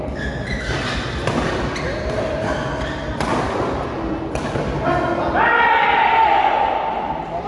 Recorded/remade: recorded